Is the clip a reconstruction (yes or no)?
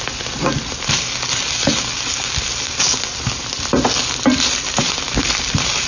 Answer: no